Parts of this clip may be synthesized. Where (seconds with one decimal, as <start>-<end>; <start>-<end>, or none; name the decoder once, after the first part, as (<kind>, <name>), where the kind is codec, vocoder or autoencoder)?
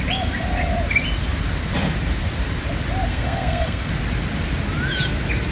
3.1-3.9 (codec, SNAC)